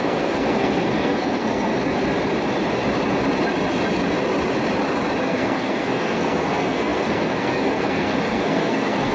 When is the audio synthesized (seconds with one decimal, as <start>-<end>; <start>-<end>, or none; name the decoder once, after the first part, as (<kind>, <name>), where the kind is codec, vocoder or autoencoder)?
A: 0.0-1.7 (codec, SNAC); 5.2-9.1